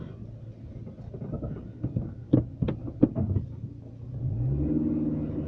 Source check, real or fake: real